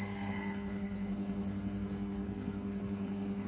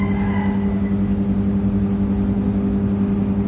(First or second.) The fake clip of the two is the first